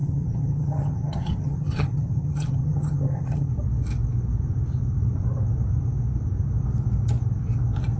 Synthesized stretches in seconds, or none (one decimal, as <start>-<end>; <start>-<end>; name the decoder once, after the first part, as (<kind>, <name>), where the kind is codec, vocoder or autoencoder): 0.0-3.5 (vocoder, HiFi-GAN)